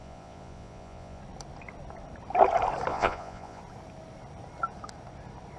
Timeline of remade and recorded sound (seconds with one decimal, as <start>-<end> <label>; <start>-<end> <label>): 0.0-1.2 remade; 1.2-2.9 recorded; 2.9-3.6 remade; 3.6-5.6 recorded